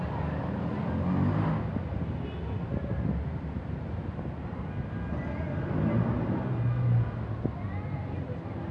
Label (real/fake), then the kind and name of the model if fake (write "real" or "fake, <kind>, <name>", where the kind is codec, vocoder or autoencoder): real